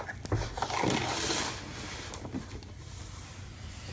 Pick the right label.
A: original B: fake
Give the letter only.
A